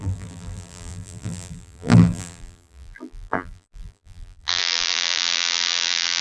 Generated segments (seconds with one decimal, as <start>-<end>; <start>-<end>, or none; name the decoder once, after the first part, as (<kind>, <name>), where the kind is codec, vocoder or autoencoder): 0.0-6.2 (vocoder, BigVGAN v2)